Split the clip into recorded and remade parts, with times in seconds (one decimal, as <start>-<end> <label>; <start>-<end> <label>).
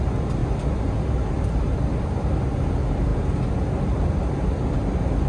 0.0-5.3 recorded